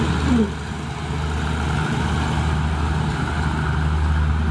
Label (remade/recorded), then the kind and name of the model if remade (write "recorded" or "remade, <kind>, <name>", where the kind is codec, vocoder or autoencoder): recorded